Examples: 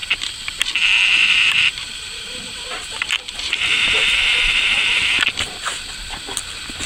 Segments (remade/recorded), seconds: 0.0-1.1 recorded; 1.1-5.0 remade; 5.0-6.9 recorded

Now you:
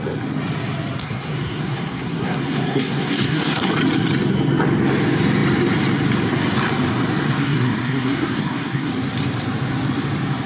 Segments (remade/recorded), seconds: 0.0-1.0 recorded; 1.0-3.7 remade; 3.7-7.4 recorded; 7.4-8.9 remade; 8.9-10.5 recorded

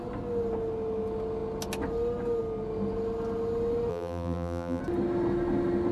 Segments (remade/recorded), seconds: 0.0-3.9 recorded; 3.9-4.8 remade; 4.8-5.9 recorded

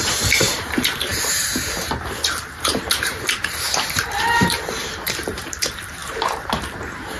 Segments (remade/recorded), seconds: 0.0-7.2 remade